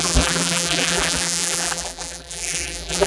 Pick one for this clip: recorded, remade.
remade